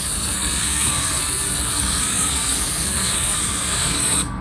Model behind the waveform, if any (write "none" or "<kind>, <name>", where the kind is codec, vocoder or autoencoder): codec, SNAC